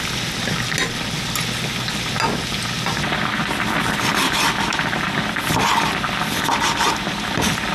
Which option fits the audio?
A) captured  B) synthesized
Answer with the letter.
A